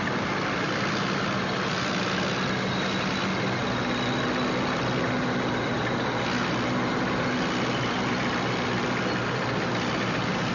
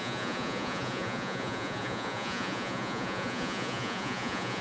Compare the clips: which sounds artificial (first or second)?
second